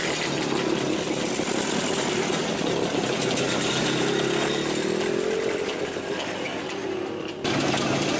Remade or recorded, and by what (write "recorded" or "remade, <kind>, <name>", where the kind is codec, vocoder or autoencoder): recorded